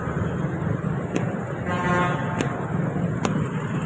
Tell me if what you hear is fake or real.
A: real